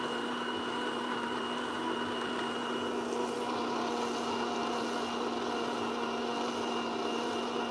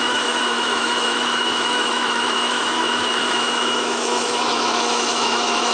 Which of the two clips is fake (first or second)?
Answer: second